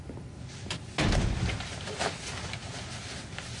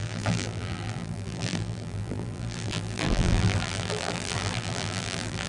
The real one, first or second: first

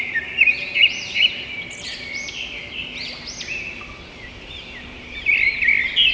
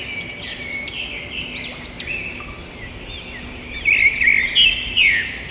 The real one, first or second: second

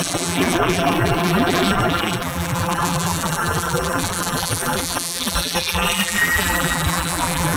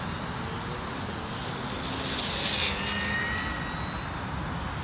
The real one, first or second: second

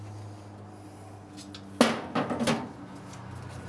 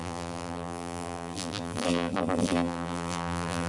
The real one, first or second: first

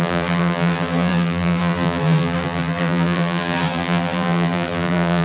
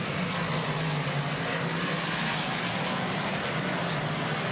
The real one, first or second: second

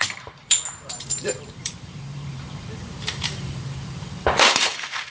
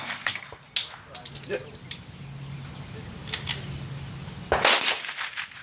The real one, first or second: second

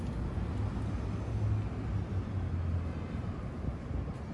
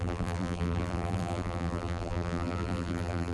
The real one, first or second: first